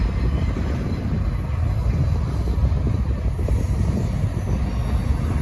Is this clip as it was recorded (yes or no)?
yes